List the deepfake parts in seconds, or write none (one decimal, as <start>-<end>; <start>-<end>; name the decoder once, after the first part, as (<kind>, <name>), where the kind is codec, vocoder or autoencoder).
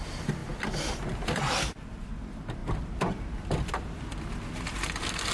0.4-1.8 (vocoder, BigVGAN v2); 2.6-4.2